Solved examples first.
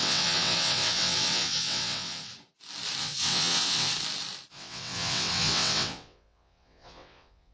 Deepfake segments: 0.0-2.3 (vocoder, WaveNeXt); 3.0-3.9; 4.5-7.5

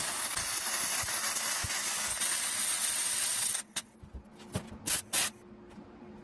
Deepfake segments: 2.1-4.0 (vocoder, WaveNeXt)

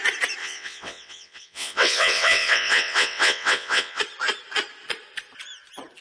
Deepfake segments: 0.4-4.0 (vocoder, WaveNeXt)